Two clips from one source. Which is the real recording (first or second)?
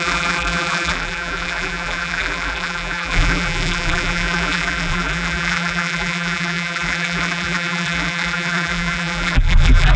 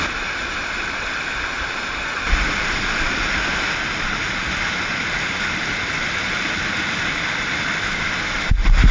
second